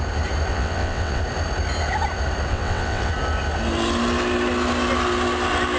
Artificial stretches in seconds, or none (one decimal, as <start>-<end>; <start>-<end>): 0.5-1.2; 2.5-3.1